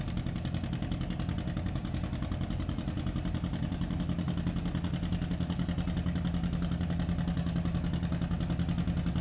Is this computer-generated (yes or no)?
no